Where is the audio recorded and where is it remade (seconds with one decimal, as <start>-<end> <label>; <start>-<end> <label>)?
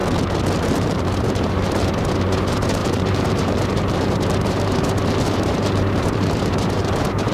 0.0-0.6 recorded; 0.6-7.3 remade